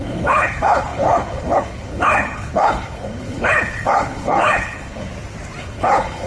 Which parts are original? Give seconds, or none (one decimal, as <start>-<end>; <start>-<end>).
5.1-5.6